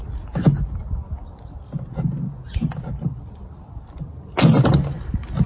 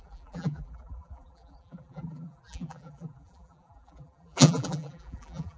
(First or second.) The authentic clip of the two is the first